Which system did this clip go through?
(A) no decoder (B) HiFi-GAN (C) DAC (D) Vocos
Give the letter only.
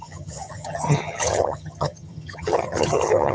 B